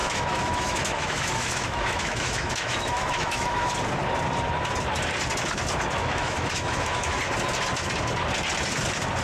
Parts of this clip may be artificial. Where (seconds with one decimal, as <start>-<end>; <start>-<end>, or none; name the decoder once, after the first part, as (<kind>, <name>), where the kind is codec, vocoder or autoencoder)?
0.0-3.7 (autoencoder, DAC-VAE); 6.0-7.2